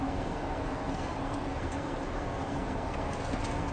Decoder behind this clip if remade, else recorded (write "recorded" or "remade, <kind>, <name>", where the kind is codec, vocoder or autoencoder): remade, codec, SNAC